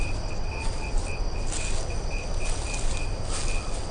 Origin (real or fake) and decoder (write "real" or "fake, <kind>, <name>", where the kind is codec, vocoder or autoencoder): real